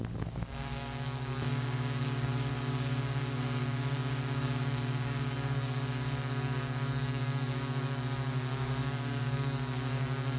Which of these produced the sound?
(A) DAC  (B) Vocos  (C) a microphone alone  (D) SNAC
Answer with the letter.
A